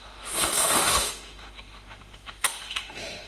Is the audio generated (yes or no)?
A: yes